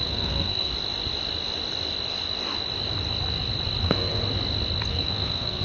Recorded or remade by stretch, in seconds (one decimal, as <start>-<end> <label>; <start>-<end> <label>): 0.0-0.7 remade; 0.7-3.8 recorded; 3.8-4.2 remade; 4.2-4.9 recorded; 4.9-5.6 remade